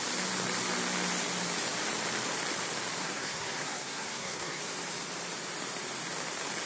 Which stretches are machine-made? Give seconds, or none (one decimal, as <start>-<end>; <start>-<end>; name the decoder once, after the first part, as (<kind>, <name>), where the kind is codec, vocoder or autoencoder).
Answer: 3.0-4.6 (codec, SNAC)